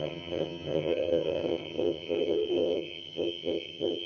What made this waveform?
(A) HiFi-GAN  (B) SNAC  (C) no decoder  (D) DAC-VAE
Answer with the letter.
A